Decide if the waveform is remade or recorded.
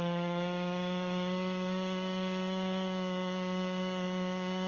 remade